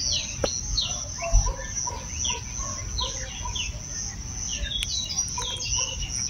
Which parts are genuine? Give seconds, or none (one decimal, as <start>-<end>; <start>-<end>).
0.0-0.8; 1.8-6.3